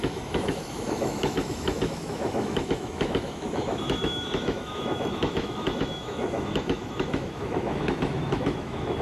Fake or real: fake